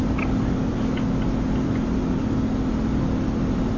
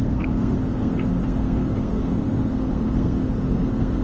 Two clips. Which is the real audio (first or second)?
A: first